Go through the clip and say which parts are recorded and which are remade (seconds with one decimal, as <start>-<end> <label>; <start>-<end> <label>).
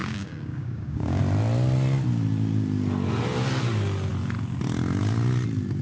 0.0-1.2 remade; 1.2-5.8 recorded